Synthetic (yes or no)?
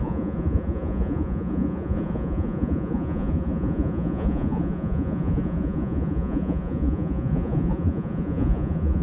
yes